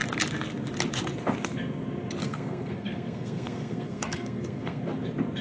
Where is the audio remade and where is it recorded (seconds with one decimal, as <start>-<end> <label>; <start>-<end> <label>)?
0.0-2.2 recorded; 2.2-4.8 remade; 4.8-5.4 recorded